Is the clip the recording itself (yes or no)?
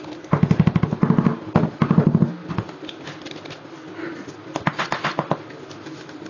yes